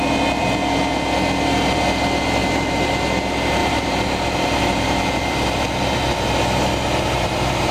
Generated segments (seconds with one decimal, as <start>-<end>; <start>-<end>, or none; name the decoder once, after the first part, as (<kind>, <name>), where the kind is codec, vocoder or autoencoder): 2.4-3.0 (vocoder, BigVGAN v2); 3.6-7.7